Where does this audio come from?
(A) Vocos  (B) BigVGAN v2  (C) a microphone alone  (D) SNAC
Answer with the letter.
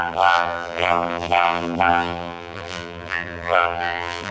B